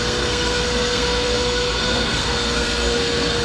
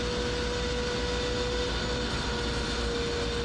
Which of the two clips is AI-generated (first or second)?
first